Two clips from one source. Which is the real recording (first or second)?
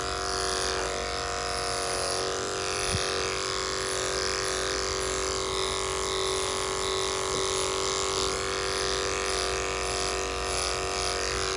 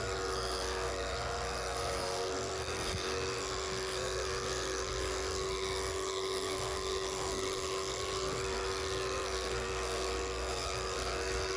first